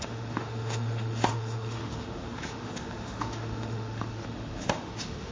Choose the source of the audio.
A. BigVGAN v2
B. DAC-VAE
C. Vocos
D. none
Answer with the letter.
B